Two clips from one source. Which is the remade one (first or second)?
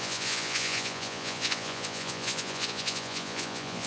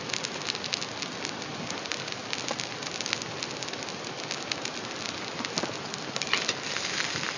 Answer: first